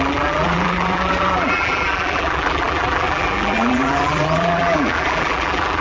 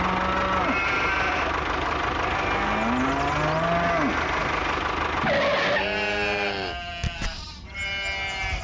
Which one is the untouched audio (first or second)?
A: second